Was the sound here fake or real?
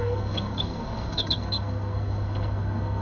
fake